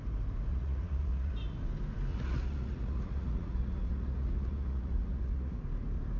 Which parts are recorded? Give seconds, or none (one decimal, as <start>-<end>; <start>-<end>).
0.0-0.5; 1.3-2.1; 5.6-6.2